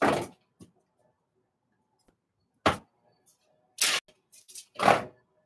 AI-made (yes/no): no